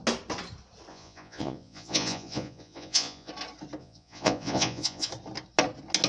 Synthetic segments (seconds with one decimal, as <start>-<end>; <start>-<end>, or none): 0.9-3.3; 3.8-5.1